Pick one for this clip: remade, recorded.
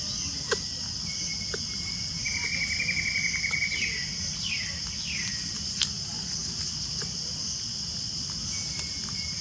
recorded